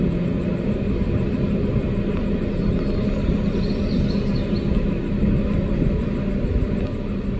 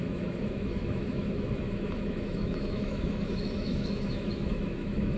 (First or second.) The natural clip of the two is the first